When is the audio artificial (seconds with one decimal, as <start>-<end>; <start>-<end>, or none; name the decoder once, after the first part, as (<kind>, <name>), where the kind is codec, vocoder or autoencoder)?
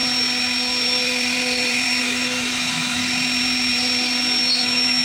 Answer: 2.0-3.0 (autoencoder, DAC-VAE); 4.5-5.0